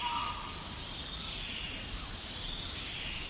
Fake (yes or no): no